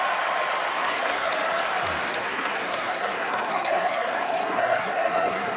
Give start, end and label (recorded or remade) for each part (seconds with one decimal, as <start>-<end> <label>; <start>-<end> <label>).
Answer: 0.0-0.7 recorded; 0.7-1.3 remade; 1.3-2.2 recorded; 2.2-5.6 remade